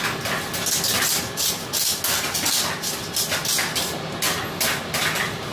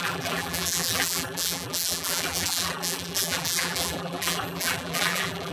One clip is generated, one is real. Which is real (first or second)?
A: first